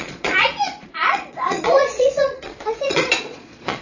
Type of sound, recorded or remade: remade